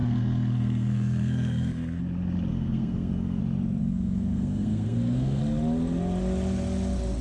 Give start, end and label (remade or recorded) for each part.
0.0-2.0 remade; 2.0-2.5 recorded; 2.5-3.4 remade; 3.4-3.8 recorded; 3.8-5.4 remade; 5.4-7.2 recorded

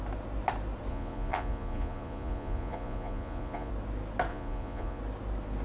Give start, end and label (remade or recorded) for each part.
0.0-0.9 recorded; 0.9-3.7 remade; 3.7-4.3 recorded; 4.3-5.0 remade; 5.0-5.6 recorded

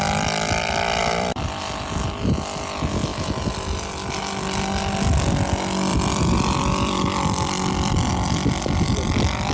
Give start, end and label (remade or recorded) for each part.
0.0-1.0 recorded; 1.0-1.6 remade; 1.6-5.9 recorded; 5.9-8.1 remade; 8.1-9.5 recorded